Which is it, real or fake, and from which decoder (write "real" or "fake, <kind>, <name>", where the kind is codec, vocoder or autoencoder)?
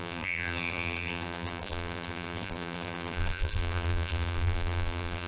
fake, vocoder, BigVGAN v2